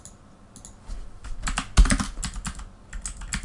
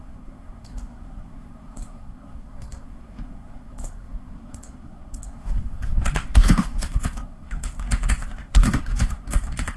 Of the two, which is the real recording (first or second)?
first